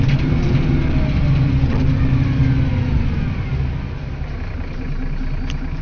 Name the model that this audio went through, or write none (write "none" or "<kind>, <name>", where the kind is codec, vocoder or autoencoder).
none